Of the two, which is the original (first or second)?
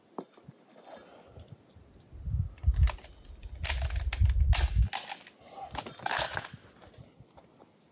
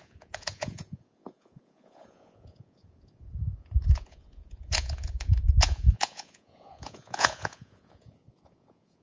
first